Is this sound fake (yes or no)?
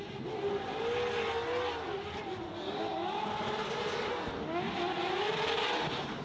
no